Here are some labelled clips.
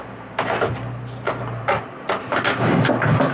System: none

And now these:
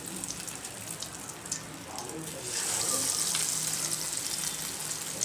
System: none